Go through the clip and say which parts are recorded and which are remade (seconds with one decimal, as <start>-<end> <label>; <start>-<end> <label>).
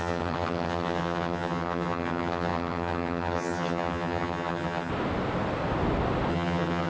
0.0-4.9 remade; 4.9-6.3 recorded; 6.3-6.9 remade